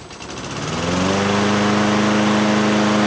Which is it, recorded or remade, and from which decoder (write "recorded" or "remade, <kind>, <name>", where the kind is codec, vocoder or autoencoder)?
recorded